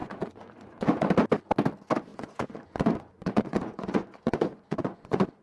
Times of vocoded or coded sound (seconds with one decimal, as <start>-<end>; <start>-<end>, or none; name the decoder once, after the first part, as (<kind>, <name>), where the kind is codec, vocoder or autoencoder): 0.0-1.1 (vocoder, Vocos); 2.1-5.4